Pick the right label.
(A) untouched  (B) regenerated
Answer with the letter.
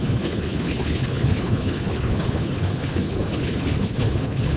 B